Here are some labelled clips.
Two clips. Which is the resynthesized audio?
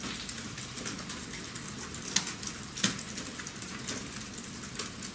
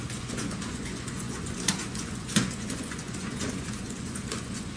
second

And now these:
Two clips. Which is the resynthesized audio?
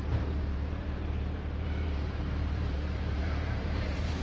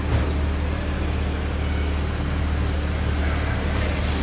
first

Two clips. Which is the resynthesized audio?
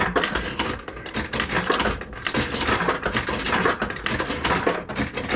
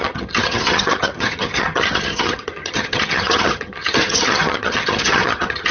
second